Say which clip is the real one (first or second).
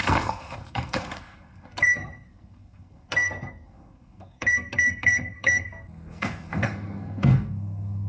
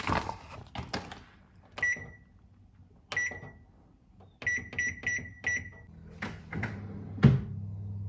second